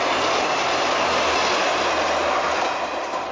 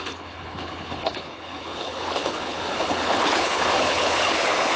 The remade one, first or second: second